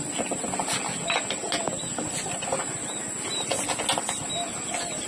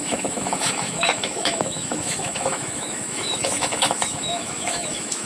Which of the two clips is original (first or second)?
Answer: first